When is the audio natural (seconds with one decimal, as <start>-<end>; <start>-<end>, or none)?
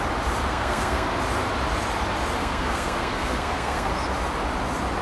0.0-0.5; 1.1-2.4; 3.9-5.0